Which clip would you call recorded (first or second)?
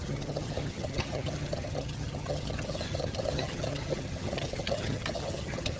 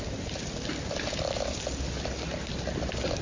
second